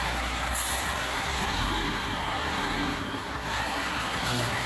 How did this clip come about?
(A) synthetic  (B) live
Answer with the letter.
A